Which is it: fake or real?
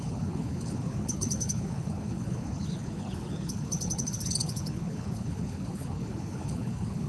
fake